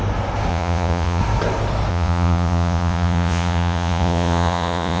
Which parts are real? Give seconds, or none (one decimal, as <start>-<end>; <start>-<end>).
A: 0.0-0.5; 1.2-1.9